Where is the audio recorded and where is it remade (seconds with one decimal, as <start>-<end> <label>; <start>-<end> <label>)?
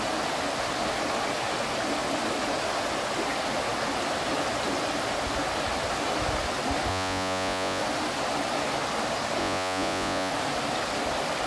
0.0-6.9 recorded; 6.9-7.8 remade; 7.8-9.4 recorded; 9.4-10.3 remade; 10.3-11.5 recorded